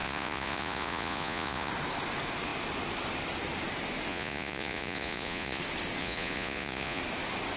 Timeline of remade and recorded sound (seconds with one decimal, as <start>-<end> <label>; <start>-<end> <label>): 0.0-1.7 remade; 1.7-4.1 recorded; 4.1-5.6 remade; 5.6-6.0 recorded; 6.0-7.0 remade; 7.0-7.6 recorded